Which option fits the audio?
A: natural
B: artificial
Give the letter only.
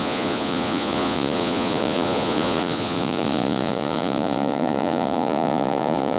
B